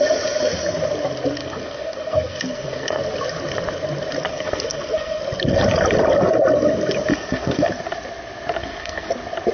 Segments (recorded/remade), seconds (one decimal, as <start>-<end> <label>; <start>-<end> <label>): 0.0-1.4 recorded; 1.4-3.0 remade; 3.0-4.3 recorded; 4.3-5.2 remade; 5.2-7.1 recorded; 7.1-7.7 remade; 7.7-8.6 recorded; 8.6-9.1 remade; 9.1-9.5 recorded